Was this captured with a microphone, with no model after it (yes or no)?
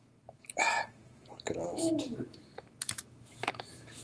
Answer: no